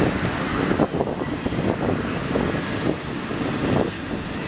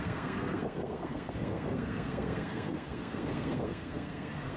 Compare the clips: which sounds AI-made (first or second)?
second